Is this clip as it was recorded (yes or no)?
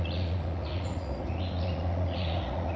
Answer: no